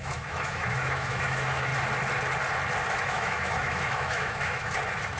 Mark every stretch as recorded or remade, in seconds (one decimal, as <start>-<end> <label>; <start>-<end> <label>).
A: 0.0-1.7 remade; 1.7-3.0 recorded; 3.0-5.2 remade